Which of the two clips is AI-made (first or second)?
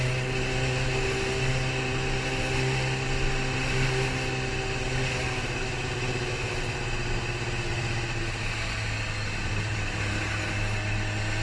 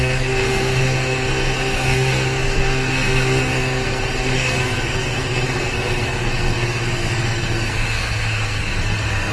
second